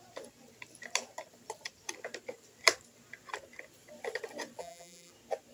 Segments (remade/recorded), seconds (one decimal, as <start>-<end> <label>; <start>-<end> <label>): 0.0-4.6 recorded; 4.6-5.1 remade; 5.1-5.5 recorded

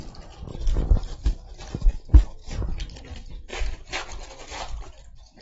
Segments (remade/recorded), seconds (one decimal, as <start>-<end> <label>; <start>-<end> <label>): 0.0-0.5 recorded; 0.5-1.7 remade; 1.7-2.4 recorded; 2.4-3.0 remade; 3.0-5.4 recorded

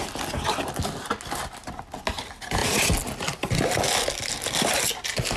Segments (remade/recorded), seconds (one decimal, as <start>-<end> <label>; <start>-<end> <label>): 0.0-5.4 recorded